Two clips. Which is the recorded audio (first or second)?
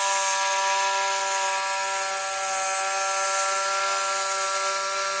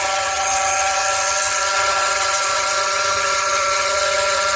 first